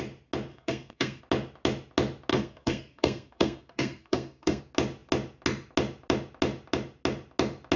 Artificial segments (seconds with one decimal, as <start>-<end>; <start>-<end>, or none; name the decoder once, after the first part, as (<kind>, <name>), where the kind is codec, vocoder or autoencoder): 0.5-1.2 (codec, SNAC); 2.3-4.6